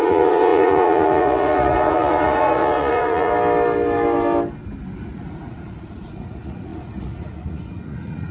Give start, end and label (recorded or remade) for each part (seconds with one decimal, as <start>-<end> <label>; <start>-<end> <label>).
0.0-3.3 remade; 3.3-5.1 recorded; 5.1-8.3 remade